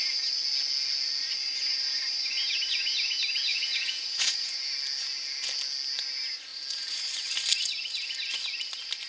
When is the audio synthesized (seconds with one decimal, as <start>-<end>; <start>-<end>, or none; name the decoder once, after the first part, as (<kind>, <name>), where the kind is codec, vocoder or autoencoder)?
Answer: 3.5-4.6 (vocoder, Vocos)